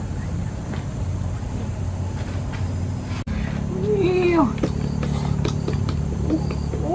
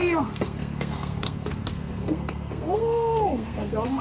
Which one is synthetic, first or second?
second